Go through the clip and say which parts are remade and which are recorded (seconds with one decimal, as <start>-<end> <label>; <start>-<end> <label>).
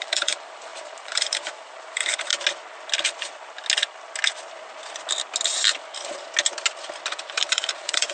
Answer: 0.0-2.3 remade; 2.3-7.2 recorded; 7.2-8.1 remade